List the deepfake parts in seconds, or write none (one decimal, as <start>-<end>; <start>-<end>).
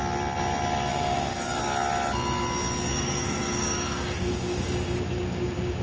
0.9-1.6; 2.9-5.8